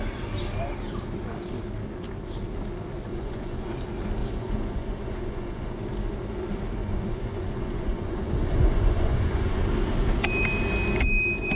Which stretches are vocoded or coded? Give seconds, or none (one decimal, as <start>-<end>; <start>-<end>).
3.1-3.7; 4.2-5.8; 6.8-9.6